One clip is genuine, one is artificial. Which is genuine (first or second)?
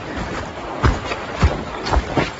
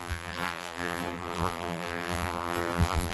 first